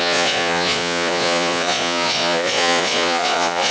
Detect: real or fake fake